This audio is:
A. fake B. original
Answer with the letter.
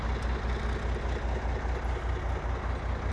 B